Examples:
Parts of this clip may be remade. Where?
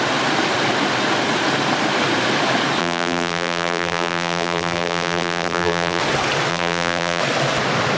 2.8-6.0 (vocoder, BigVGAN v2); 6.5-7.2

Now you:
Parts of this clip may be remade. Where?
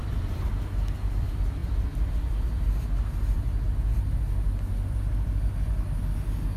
0.0-0.5 (vocoder, BigVGAN v2)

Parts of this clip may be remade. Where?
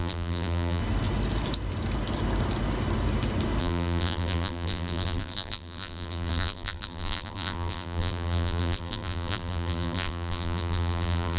0.0-0.8 (vocoder, BigVGAN v2); 3.6-11.4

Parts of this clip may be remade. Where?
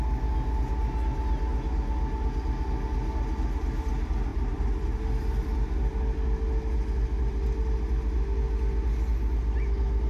4.3-5.0 (vocoder, BigVGAN v2)